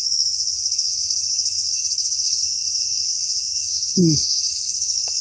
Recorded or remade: remade